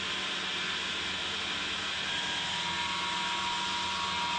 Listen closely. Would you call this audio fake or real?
real